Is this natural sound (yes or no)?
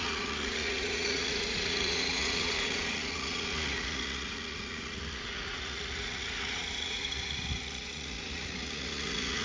no